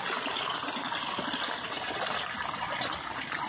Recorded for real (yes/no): yes